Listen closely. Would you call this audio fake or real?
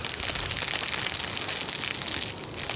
real